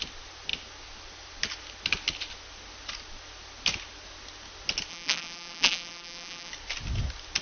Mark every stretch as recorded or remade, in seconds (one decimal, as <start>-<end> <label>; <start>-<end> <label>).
0.0-4.9 recorded; 4.9-6.5 remade; 6.5-7.4 recorded